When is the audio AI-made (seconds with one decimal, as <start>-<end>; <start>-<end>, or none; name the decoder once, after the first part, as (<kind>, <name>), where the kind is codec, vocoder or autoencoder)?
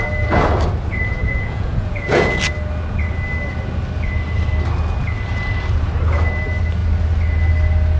0.9-2.4 (vocoder, Vocos)